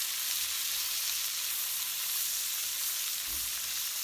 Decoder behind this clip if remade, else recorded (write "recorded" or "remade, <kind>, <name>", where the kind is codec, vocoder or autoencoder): recorded